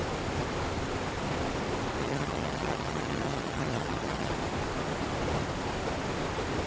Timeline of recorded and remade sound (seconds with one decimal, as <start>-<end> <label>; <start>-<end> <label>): 0.0-2.0 recorded; 2.0-4.3 remade; 4.3-6.7 recorded